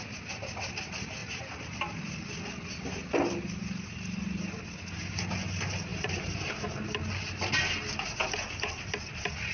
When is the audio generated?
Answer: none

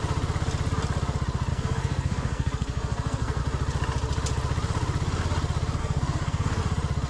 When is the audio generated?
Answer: 1.5-3.4 (codec, SNAC); 5.8-6.6

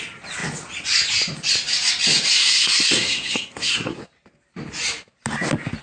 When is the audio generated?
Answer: 2.4-4.0 (codec, SNAC)